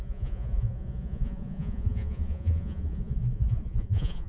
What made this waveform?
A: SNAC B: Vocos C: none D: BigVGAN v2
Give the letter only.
B